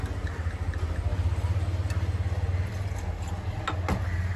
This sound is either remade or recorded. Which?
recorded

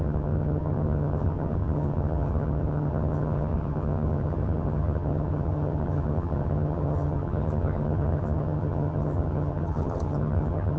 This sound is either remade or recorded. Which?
remade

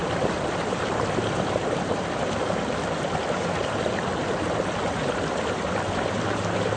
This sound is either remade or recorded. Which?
remade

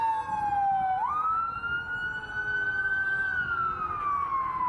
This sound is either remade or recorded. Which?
recorded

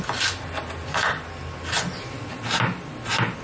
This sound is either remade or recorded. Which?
recorded